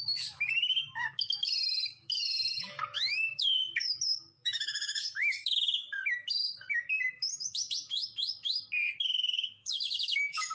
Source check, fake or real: fake